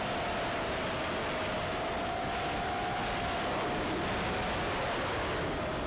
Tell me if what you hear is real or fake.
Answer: real